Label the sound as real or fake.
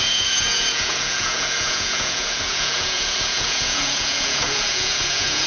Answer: fake